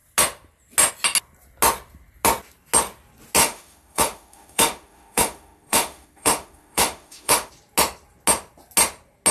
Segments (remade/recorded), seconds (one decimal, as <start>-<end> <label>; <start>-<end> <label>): 0.0-3.4 recorded; 3.4-7.5 remade; 7.5-9.3 recorded